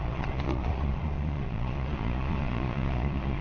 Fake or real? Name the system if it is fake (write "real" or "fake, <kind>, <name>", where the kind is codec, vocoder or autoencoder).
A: fake, vocoder, Vocos